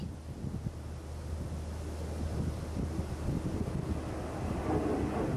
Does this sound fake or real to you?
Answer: real